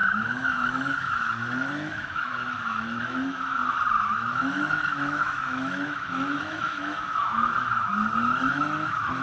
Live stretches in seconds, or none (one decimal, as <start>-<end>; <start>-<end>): 3.6-4.1; 7.9-8.5